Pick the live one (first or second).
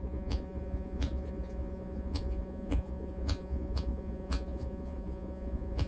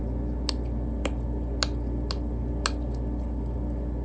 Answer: second